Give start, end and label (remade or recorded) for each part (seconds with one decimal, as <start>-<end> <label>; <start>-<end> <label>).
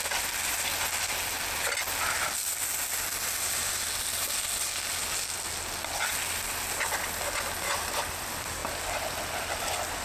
0.0-10.0 recorded